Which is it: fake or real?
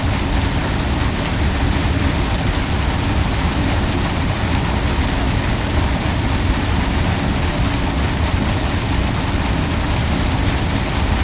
real